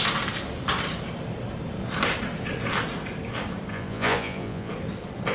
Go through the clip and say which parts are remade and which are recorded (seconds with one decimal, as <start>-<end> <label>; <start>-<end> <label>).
0.0-3.7 recorded; 3.7-4.7 remade; 4.7-5.3 recorded